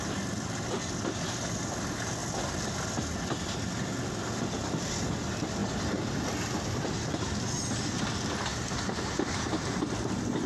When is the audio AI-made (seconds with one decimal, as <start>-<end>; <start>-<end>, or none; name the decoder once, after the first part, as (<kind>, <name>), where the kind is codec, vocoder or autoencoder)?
8.5-9.8 (vocoder, BigVGAN v2)

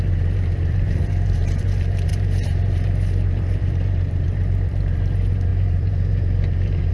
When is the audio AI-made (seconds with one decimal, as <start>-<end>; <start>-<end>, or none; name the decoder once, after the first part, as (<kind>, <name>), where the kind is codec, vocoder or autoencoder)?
0.0-6.9 (vocoder, BigVGAN v2)

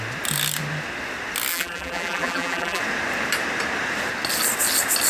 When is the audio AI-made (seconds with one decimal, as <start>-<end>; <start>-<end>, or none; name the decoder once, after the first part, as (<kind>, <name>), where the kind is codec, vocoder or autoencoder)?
1.5-2.8 (vocoder, BigVGAN v2)

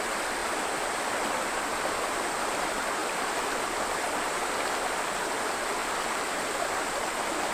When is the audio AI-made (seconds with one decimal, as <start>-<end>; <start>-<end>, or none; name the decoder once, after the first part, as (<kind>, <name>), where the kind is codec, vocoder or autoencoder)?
3.0-3.6 (vocoder, BigVGAN v2); 5.8-6.6

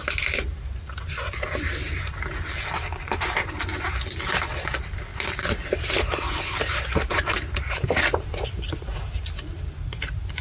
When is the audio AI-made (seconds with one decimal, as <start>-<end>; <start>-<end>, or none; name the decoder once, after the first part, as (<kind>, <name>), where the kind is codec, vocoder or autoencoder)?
5.1-8.0 (vocoder, BigVGAN v2)